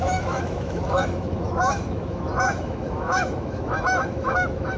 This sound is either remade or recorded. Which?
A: remade